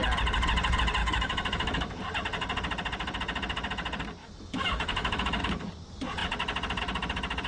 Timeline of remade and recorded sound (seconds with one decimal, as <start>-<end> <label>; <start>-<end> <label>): 0.0-1.0 recorded; 1.0-2.0 remade; 2.0-4.2 recorded; 4.2-5.4 remade; 5.4-7.5 recorded